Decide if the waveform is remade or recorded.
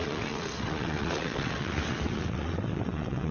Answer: remade